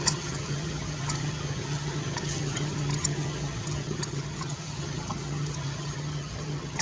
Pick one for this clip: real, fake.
fake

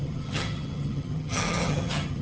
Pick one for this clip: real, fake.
fake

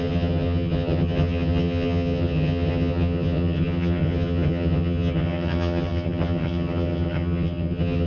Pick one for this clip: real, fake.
fake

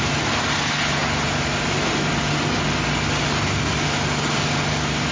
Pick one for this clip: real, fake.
real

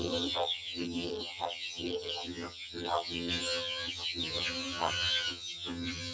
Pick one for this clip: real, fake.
fake